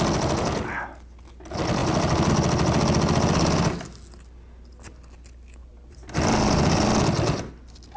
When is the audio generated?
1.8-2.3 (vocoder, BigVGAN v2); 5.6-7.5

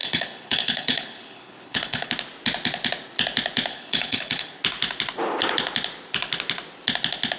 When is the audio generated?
0.0-2.1 (codec, HILCodec); 3.7-4.6